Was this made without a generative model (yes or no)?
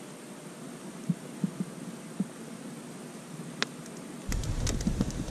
yes